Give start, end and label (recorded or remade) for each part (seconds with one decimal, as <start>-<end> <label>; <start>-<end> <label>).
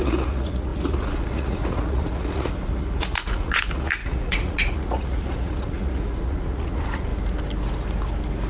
0.0-7.1 remade; 7.1-8.5 recorded